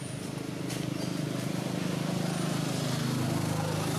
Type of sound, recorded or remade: recorded